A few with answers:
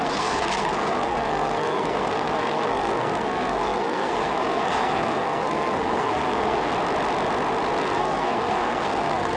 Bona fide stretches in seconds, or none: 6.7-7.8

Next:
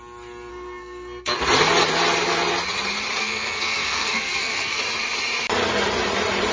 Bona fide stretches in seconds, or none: 0.0-0.5; 1.4-3.2; 4.8-6.5

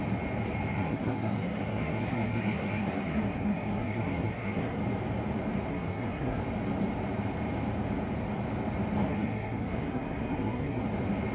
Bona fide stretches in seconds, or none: 0.0-0.7; 4.8-5.7; 6.4-9.1; 10.8-11.3

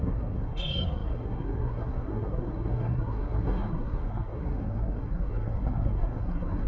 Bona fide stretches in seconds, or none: none